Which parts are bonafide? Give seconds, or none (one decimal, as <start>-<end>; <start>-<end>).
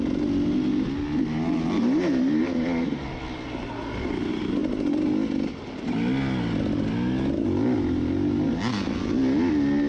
0.0-1.8; 3.0-9.9